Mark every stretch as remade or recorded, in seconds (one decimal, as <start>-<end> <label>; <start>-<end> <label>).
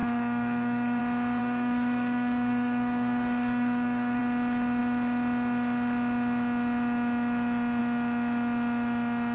0.0-1.0 remade; 1.0-1.4 recorded; 1.4-4.2 remade; 4.2-9.3 recorded